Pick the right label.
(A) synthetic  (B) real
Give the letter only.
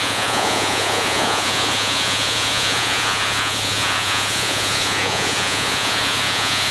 A